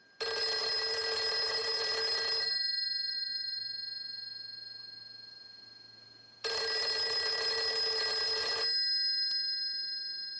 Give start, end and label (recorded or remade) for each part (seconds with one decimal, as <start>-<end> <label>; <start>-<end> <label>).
0.0-3.1 recorded; 3.1-3.6 remade; 3.6-10.4 recorded